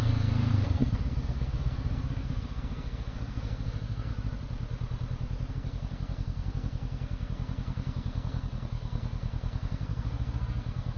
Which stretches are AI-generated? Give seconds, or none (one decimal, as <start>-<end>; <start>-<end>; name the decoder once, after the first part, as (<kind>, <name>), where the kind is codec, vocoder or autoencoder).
0.0-4.1 (codec, SNAC); 5.5-11.0